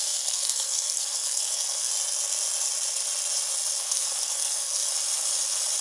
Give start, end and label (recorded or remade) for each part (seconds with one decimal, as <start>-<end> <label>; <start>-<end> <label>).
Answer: 0.0-1.9 remade; 1.9-3.8 recorded; 3.8-4.9 remade; 4.9-5.8 recorded

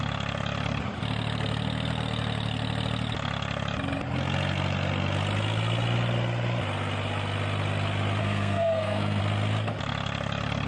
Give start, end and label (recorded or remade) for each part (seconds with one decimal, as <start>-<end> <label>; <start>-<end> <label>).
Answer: 0.0-8.2 recorded; 8.2-9.2 remade; 9.2-10.7 recorded